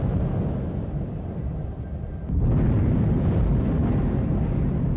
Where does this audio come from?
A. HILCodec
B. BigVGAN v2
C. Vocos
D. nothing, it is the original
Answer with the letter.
D